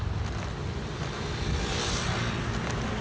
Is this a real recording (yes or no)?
yes